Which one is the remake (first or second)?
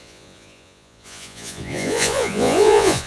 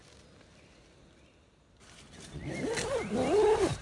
first